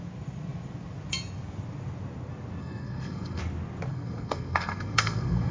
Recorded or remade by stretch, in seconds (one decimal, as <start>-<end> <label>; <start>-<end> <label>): 0.0-2.6 recorded; 2.6-3.4 remade; 3.4-3.9 recorded; 3.9-5.5 remade